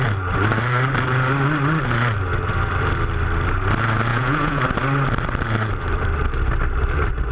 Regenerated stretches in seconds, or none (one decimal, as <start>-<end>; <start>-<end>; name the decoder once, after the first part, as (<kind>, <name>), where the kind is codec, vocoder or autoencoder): 4.1-4.6 (vocoder, Vocos)